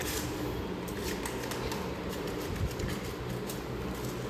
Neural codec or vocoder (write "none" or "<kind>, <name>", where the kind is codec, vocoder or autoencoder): none